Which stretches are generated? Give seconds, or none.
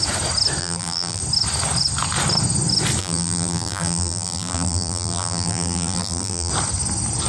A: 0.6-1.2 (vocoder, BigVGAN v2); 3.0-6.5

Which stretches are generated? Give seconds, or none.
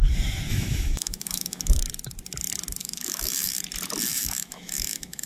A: 0.5-1.7 (autoencoder, DAC-VAE); 2.8-3.5; 4.1-5.3